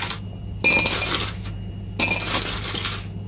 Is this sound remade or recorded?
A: recorded